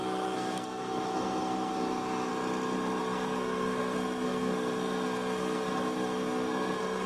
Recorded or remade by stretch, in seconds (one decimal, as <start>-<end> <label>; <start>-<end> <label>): 0.0-2.3 remade; 2.3-3.0 recorded; 3.0-7.1 remade